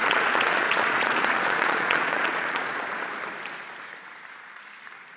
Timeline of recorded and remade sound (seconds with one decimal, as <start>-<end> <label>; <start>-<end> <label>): 0.0-3.1 remade; 3.1-5.2 recorded